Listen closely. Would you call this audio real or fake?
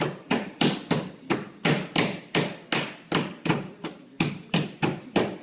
real